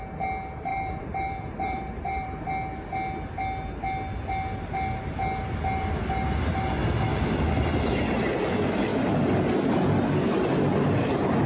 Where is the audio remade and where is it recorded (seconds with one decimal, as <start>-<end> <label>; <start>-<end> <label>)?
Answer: 0.0-0.7 recorded; 0.7-2.4 remade; 2.4-7.1 recorded; 7.1-7.9 remade; 7.9-11.5 recorded